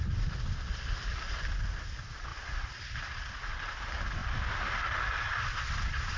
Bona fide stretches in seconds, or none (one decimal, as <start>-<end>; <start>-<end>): 0.0-6.2